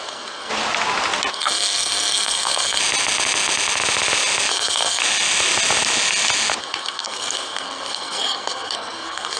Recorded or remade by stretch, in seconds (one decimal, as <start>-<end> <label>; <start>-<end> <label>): 0.0-0.5 remade; 0.5-1.3 recorded; 1.3-2.8 remade; 2.8-4.5 recorded; 4.5-5.0 remade; 5.0-6.6 recorded; 6.6-9.4 remade